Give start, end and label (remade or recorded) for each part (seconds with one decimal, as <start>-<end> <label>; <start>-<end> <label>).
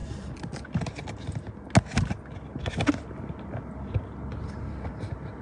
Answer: 0.0-5.4 recorded